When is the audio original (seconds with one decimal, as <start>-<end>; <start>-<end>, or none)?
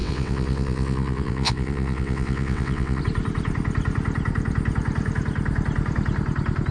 3.0-6.7